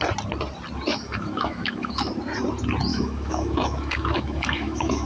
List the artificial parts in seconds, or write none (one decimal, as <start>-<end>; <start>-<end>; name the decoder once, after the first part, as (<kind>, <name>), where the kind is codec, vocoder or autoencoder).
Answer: 0.9-2.1 (autoencoder, DAC-VAE); 2.9-5.1